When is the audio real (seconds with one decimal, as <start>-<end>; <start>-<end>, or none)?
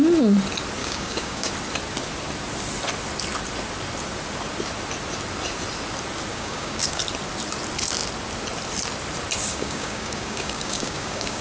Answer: 0.0-0.8; 1.5-6.3; 7.0-9.4